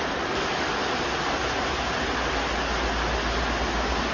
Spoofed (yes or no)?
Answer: no